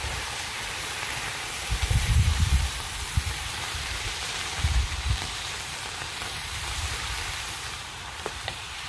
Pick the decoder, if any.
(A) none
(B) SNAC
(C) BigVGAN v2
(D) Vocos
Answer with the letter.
C